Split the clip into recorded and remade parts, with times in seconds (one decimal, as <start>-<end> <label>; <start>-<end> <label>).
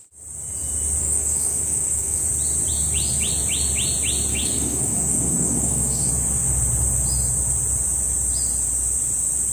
0.0-1.0 recorded; 1.0-2.2 remade; 2.2-4.3 recorded; 4.3-6.1 remade; 6.1-9.5 recorded